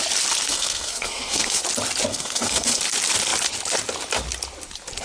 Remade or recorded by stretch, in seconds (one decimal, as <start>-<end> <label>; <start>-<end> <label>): 0.0-0.4 recorded; 0.4-1.6 remade; 1.6-2.1 recorded; 2.1-2.8 remade; 2.8-5.0 recorded